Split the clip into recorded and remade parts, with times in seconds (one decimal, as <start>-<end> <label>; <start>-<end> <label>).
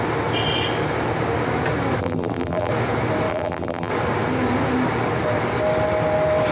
0.0-2.0 recorded; 2.0-2.7 remade; 2.7-3.3 recorded; 3.3-3.9 remade; 3.9-6.5 recorded